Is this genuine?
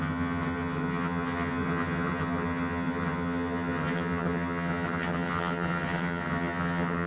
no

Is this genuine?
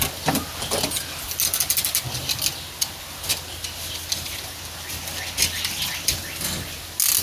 yes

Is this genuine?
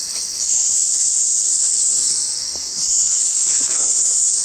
no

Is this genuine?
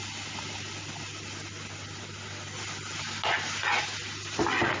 yes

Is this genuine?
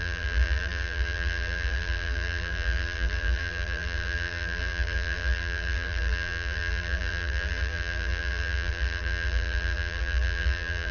no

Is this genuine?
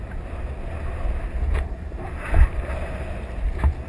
yes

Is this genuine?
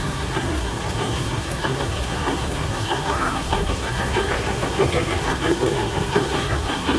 no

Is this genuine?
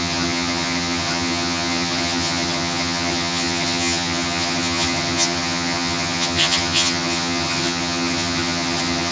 no